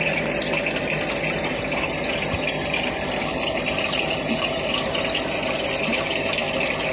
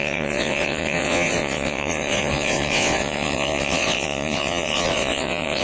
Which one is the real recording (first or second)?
first